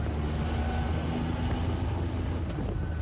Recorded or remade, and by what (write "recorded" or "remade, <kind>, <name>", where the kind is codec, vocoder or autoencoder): recorded